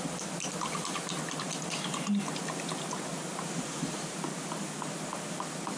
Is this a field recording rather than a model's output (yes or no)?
yes